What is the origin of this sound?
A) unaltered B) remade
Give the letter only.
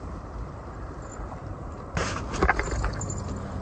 A